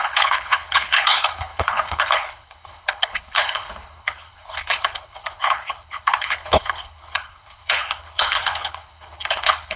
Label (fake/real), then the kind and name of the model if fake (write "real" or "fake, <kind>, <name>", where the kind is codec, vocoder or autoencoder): fake, codec, HILCodec